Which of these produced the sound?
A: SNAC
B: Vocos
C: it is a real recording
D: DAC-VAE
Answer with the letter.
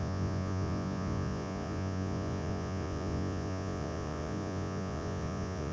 B